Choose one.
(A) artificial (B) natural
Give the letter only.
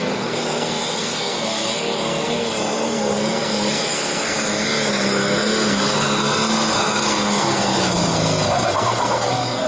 A